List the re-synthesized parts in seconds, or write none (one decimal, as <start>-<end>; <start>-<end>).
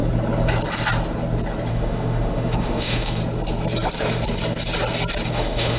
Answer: 1.7-3.2; 5.3-5.8